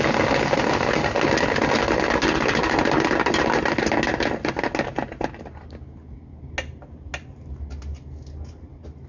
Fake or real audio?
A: real